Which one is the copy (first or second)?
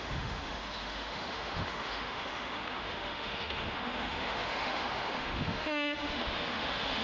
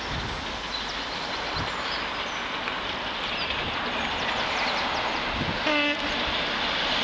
first